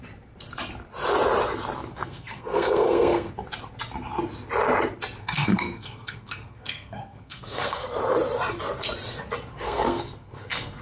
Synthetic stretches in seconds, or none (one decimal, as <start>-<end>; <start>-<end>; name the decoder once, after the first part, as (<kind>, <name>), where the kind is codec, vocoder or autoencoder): 1.9-3.3 (codec, SNAC); 5.2-8.0; 9.5-10.8